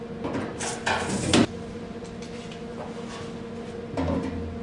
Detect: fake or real real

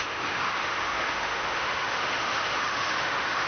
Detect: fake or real fake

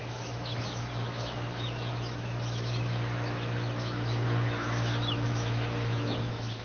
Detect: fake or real fake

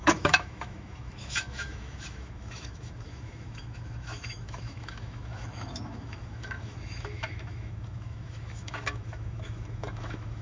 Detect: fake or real fake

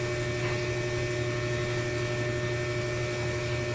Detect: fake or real real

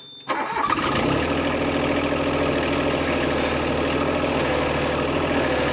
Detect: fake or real real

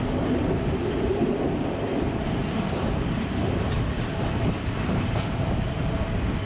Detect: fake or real real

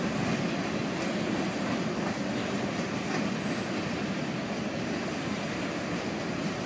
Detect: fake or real real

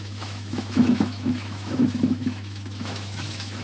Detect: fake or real fake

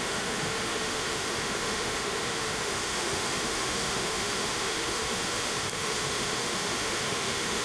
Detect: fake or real fake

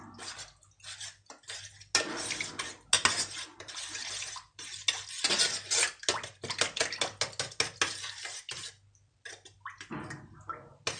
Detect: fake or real real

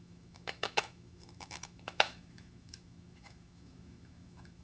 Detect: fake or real fake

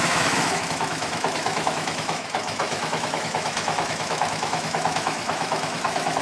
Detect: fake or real fake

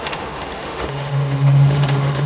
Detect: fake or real fake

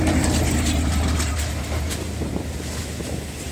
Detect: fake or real real